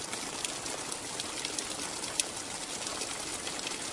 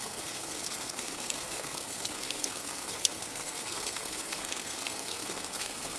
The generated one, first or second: second